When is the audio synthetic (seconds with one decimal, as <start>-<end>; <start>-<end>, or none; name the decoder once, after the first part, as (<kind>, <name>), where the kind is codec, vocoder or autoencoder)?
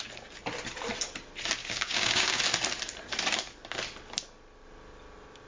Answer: 1.6-2.4 (codec, DAC)